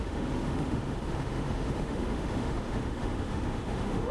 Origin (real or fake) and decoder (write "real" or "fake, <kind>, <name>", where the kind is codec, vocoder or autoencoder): fake, autoencoder, DAC-VAE